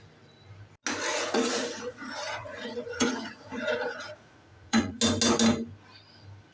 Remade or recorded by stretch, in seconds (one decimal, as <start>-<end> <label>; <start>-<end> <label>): 0.0-1.1 recorded; 1.1-5.0 remade; 5.0-6.5 recorded